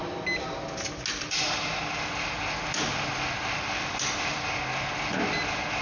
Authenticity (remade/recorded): recorded